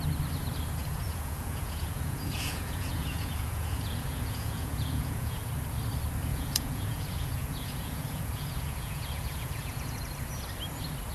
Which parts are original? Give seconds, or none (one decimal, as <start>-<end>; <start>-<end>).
0.0-0.8; 5.5-6.3; 10.0-11.1